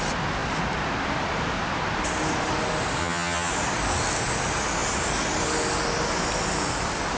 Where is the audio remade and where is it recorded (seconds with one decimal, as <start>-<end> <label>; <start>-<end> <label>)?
0.0-3.0 recorded; 3.0-3.5 remade; 3.5-7.2 recorded